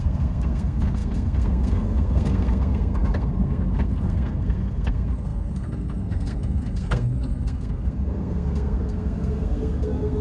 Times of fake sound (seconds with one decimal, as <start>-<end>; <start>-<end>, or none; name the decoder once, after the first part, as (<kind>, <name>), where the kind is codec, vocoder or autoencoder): 0.0-10.2 (codec, SNAC)

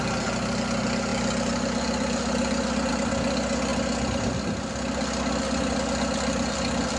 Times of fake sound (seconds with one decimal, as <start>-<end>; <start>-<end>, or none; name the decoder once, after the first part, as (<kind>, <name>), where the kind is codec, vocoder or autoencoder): none